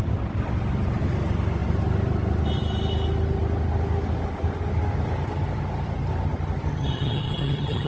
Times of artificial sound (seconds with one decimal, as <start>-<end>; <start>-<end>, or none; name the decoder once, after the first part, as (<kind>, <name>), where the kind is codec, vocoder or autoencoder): 6.7-7.9 (vocoder, HiFi-GAN)